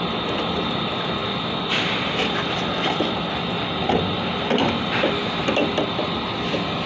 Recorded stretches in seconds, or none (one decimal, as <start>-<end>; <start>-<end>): 0.0-6.9